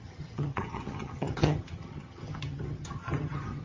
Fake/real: fake